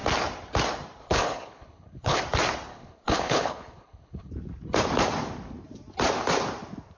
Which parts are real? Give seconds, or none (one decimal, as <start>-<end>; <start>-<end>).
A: 0.0-1.0; 2.2-2.7; 4.3-7.0